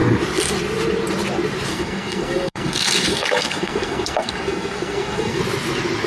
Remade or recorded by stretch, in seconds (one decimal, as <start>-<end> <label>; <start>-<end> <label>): 0.0-1.7 recorded; 1.7-5.4 remade; 5.4-6.1 recorded

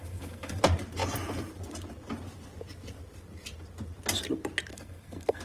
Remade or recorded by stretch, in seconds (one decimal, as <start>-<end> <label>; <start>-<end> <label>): 0.0-0.6 remade; 0.6-4.7 recorded; 4.7-5.4 remade